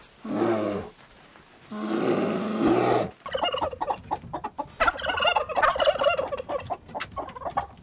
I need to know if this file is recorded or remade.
recorded